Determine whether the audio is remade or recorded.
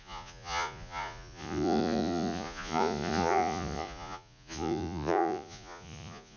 remade